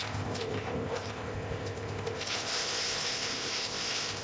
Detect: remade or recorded remade